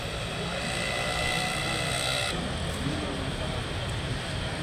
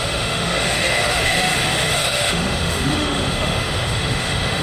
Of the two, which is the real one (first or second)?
first